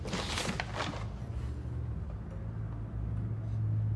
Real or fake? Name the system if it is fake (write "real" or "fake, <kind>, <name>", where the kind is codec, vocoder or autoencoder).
real